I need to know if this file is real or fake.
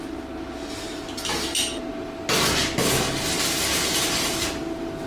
real